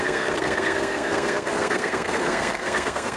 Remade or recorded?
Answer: remade